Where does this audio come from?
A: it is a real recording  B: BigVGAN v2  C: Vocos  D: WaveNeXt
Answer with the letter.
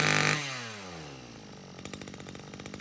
A